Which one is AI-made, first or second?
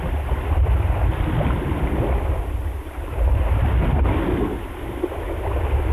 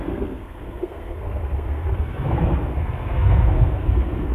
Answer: second